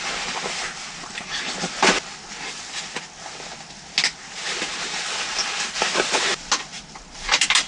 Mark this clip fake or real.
real